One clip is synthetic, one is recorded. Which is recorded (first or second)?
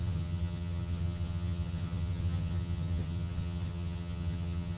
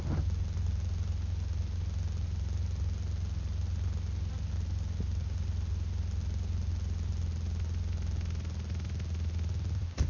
second